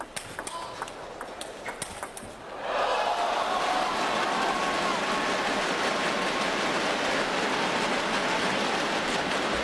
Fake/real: real